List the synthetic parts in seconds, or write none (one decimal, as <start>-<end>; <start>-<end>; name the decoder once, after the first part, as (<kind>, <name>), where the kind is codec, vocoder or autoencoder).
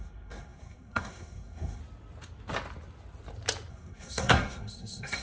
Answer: 0.0-1.8 (codec, SNAC); 3.7-5.2